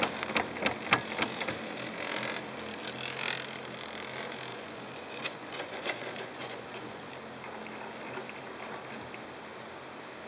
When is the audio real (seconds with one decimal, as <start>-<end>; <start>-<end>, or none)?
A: 0.0-4.5; 7.1-10.3